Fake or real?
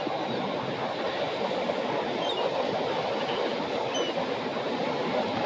real